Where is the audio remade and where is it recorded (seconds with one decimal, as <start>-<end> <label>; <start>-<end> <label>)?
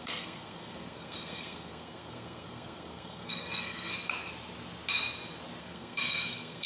0.0-3.9 remade; 3.9-5.6 recorded; 5.6-6.7 remade